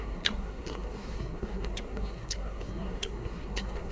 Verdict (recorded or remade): remade